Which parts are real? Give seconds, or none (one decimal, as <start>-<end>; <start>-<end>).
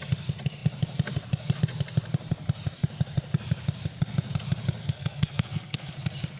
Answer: 0.0-4.8; 5.9-6.4